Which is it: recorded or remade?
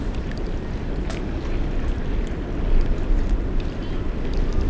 recorded